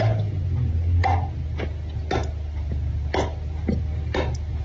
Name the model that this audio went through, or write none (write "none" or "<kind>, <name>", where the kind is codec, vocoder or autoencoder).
none